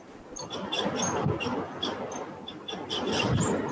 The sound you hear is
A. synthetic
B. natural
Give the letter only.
A